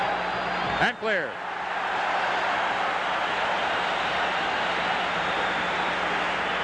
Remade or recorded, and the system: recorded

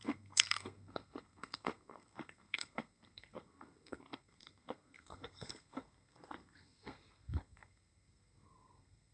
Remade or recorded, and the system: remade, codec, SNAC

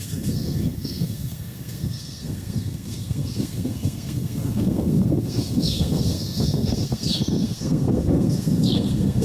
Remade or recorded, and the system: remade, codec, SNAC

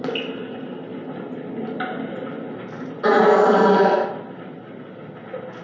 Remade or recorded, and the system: recorded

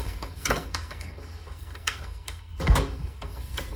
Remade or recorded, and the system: remade, codec, SNAC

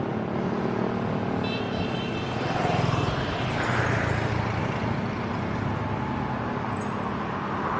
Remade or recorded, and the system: recorded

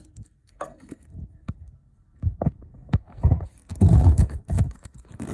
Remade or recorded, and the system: remade, codec, SNAC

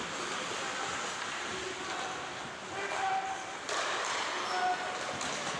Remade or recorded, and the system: recorded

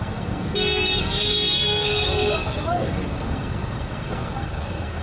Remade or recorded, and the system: remade, codec, SNAC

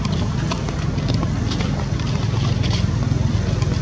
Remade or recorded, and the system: recorded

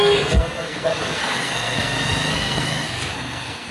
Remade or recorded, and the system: remade, codec, SNAC